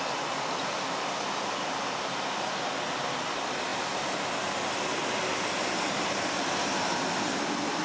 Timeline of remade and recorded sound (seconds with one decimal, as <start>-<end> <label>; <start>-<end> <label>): 0.0-7.8 recorded